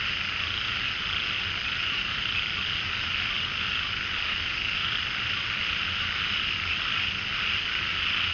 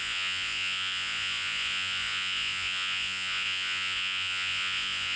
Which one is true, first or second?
first